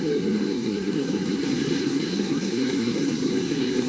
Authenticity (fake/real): fake